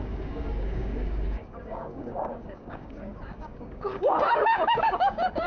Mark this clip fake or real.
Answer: fake